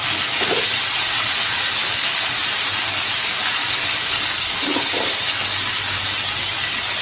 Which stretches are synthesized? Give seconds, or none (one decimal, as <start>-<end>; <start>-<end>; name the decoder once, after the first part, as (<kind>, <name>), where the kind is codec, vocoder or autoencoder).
3.6-4.9 (codec, DAC); 6.4-7.0